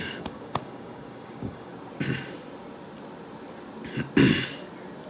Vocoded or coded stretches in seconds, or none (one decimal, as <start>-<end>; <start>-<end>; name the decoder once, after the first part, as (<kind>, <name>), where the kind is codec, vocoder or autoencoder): 0.0-1.7 (codec, DAC)